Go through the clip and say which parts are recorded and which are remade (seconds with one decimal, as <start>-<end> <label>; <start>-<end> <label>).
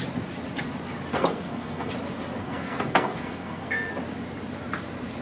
0.0-1.1 recorded; 1.1-1.9 remade; 1.9-2.4 recorded; 2.4-3.9 remade; 3.9-5.2 recorded